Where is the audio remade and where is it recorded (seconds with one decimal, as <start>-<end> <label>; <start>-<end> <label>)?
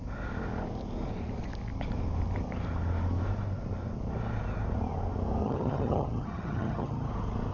0.0-5.4 recorded; 5.4-7.1 remade; 7.1-7.5 recorded